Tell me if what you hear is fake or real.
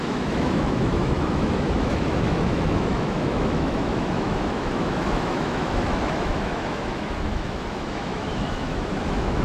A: fake